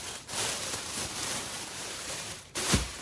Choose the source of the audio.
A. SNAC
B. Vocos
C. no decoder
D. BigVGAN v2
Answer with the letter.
D